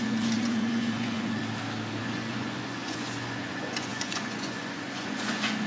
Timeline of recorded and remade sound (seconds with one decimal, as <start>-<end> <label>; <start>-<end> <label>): 0.0-1.4 remade; 1.4-2.0 recorded; 2.0-5.7 remade